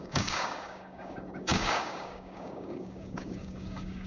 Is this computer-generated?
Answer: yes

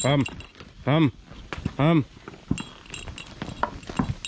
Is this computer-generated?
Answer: no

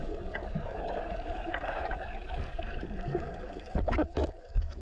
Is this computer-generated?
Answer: yes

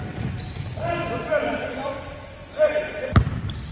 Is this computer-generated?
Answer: no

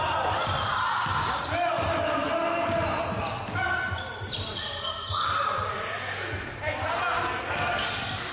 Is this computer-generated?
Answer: no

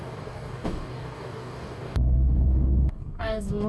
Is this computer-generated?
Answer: yes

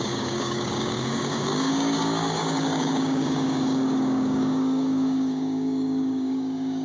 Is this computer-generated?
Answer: yes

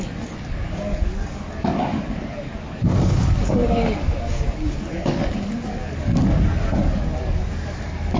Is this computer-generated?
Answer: yes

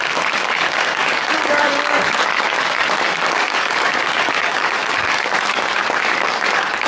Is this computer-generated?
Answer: yes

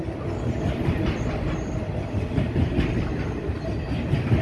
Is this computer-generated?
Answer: no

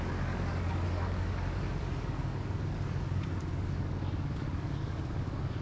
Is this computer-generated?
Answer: yes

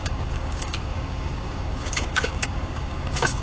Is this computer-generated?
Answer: yes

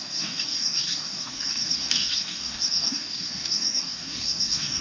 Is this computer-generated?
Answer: yes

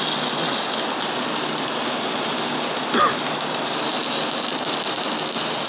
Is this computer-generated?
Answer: no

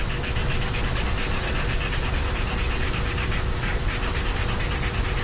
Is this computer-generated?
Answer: no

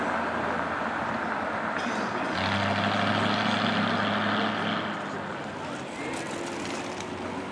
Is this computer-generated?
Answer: no